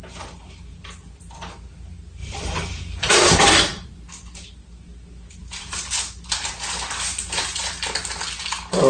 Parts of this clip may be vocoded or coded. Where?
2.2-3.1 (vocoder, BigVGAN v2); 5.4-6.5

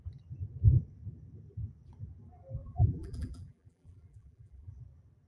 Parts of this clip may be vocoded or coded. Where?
2.6-4.8 (vocoder, BigVGAN v2)

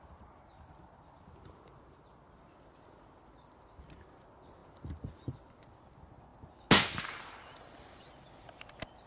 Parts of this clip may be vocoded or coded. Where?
none

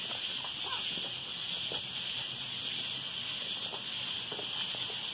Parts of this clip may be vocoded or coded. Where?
none

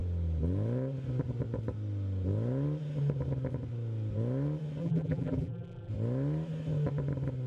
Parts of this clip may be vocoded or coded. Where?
4.8-5.9 (vocoder, BigVGAN v2)

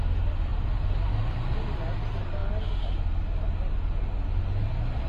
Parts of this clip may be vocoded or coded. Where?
0.0-2.4 (vocoder, BigVGAN v2); 4.3-5.1

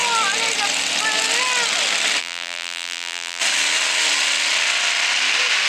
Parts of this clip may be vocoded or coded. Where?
2.2-3.4 (vocoder, BigVGAN v2)

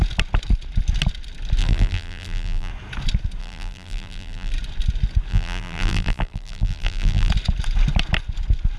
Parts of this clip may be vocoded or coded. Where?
1.6-2.7 (vocoder, BigVGAN v2); 3.4-4.5; 5.3-7.3